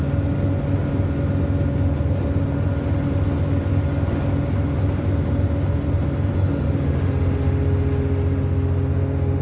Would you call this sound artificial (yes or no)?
no